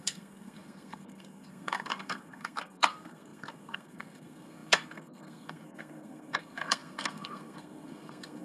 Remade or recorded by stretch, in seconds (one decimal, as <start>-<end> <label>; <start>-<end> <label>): 0.0-8.4 remade